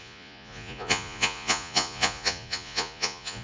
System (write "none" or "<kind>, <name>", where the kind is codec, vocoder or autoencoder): vocoder, Vocos